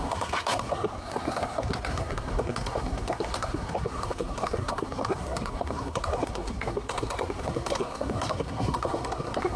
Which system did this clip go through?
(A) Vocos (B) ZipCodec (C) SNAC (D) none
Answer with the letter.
C